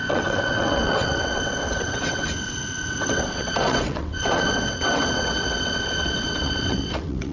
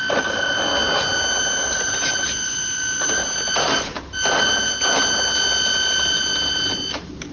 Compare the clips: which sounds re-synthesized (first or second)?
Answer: first